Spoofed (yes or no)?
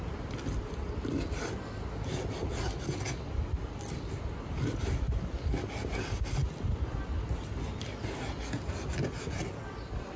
no